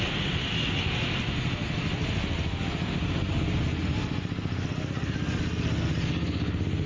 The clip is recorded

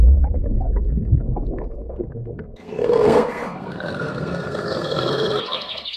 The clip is remade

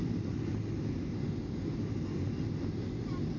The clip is recorded